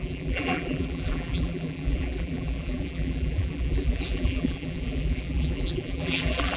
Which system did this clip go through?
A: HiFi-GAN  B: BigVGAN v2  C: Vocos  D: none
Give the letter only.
B